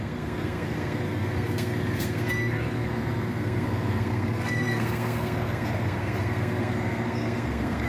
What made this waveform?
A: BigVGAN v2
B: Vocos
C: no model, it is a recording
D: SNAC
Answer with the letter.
D